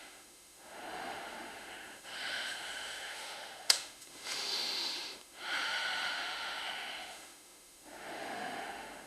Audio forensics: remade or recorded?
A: remade